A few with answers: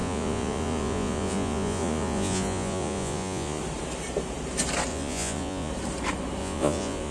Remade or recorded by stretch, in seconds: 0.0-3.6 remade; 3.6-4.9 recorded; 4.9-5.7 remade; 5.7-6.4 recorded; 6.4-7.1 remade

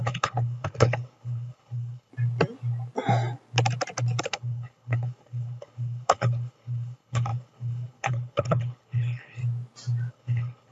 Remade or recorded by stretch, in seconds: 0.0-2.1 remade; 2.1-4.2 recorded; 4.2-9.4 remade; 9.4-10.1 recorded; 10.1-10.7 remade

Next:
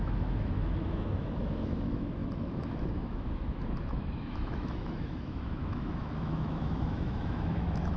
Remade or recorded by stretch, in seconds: 0.0-8.0 remade

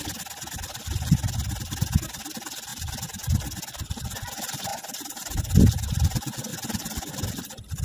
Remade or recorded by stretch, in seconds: 0.0-4.7 recorded; 4.7-5.4 remade; 5.4-7.8 recorded

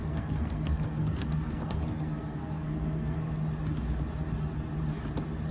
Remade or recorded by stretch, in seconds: 0.0-3.3 remade; 3.3-5.5 recorded

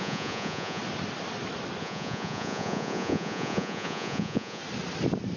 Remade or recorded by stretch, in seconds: 0.0-0.8 remade; 0.8-1.8 recorded; 1.8-4.6 remade; 4.6-5.4 recorded

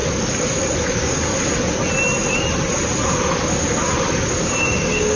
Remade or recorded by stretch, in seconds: 0.0-0.8 recorded; 0.8-1.3 remade; 1.3-4.4 recorded; 4.4-5.2 remade

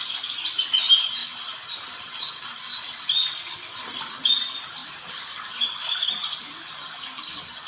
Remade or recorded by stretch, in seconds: 0.0-1.2 recorded; 1.2-3.8 remade; 3.8-4.8 recorded; 4.8-6.4 remade; 6.4-7.7 recorded